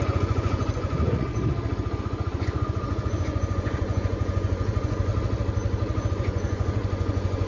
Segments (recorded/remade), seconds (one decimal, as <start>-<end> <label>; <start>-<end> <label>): 0.0-1.3 remade; 1.3-2.0 recorded; 2.0-5.1 remade; 5.1-6.1 recorded; 6.1-7.5 remade